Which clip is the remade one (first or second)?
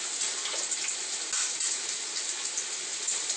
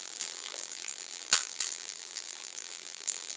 second